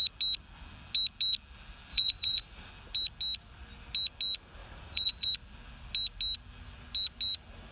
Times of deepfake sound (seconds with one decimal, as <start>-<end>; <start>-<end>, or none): 1.9-2.7; 4.6-5.3